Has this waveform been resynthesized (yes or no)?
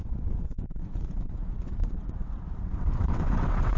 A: yes